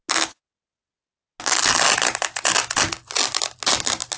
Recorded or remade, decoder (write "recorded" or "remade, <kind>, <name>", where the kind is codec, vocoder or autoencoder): recorded